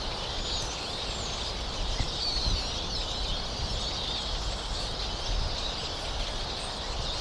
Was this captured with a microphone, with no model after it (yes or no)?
yes